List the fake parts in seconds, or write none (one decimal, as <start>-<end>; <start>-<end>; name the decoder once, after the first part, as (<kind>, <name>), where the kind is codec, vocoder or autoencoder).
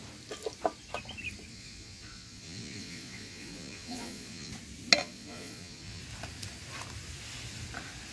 1.5-4.5 (vocoder, Vocos); 5.0-6.0